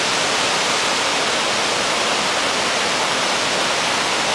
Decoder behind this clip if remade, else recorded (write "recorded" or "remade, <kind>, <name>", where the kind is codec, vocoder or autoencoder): recorded